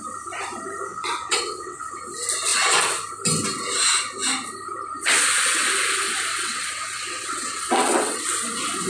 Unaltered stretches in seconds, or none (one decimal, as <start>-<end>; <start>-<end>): 0.0-0.9; 2.0-6.3; 8.2-8.9